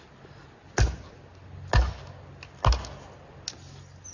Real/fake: real